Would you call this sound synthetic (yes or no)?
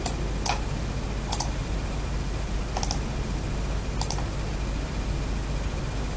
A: no